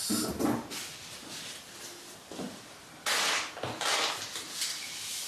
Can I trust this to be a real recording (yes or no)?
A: yes